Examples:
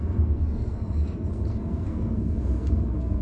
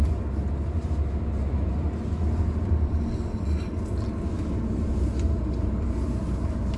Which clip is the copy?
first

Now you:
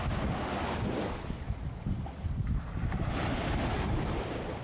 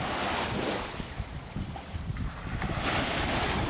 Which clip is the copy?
second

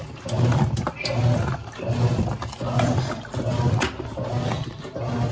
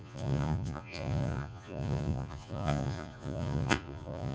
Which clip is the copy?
second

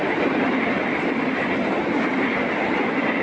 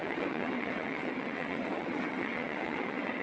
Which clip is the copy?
second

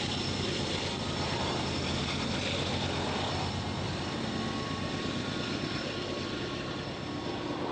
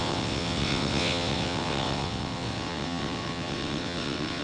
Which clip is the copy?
second